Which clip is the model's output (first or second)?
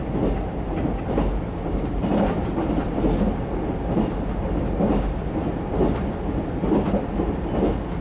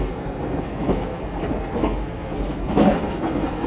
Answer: second